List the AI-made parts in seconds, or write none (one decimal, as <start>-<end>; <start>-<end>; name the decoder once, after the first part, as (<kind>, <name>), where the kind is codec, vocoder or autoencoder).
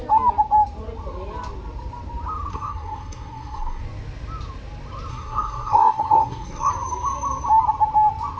2.5-3.8 (codec, SNAC); 5.1-6.7